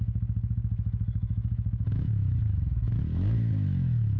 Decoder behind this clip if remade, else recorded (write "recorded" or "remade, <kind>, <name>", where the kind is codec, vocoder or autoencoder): remade, autoencoder, DAC-VAE